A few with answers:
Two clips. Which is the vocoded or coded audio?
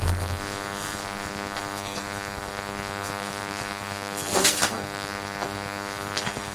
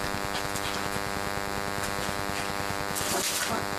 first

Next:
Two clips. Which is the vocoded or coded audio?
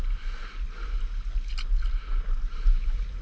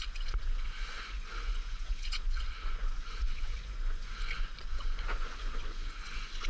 second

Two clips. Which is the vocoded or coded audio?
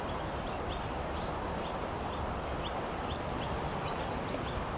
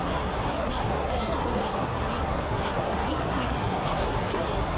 second